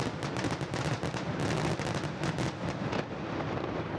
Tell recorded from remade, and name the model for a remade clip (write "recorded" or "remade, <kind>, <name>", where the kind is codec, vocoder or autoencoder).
recorded